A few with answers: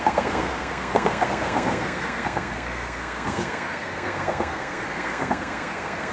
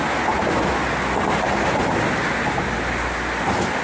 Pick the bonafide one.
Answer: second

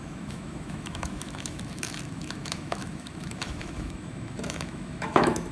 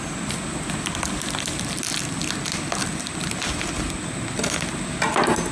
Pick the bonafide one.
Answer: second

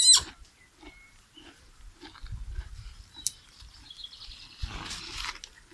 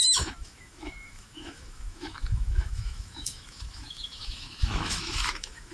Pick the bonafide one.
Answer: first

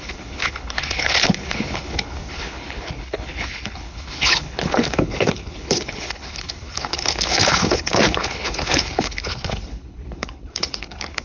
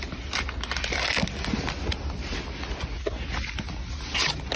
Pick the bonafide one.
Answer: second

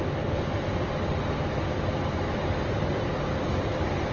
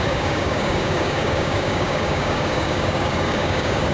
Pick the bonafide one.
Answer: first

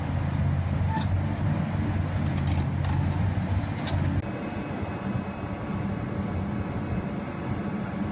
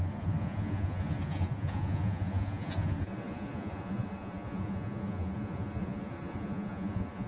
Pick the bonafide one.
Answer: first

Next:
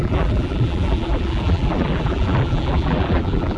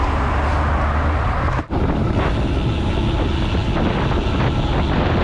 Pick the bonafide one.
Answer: second